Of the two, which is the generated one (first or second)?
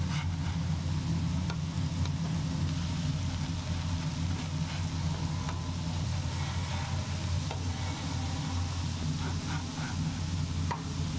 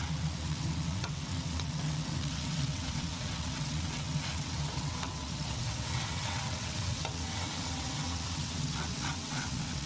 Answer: second